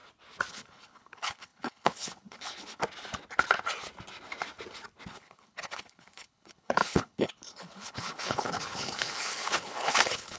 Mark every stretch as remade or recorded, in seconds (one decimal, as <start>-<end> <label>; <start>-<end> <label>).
0.0-0.5 recorded; 0.5-2.8 remade; 2.8-5.1 recorded; 5.1-10.4 remade